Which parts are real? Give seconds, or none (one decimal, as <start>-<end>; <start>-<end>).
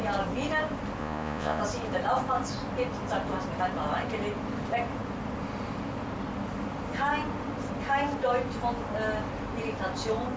0.0-1.0; 1.6-10.4